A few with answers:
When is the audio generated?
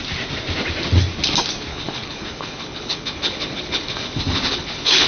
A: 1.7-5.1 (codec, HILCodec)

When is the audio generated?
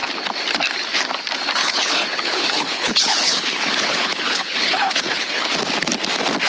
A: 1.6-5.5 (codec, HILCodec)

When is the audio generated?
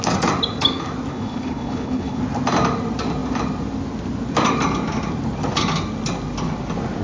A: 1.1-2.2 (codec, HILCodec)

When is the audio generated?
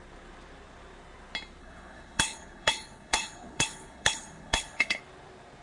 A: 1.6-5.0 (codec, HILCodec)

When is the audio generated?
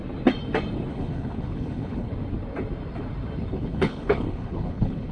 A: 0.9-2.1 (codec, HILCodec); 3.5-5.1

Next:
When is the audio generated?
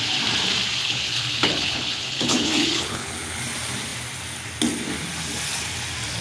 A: 0.8-3.4 (codec, HILCodec)